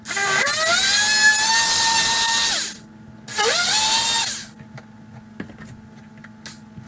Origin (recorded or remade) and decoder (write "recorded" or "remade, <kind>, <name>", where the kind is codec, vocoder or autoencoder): recorded